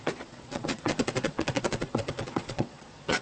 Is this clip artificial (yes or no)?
yes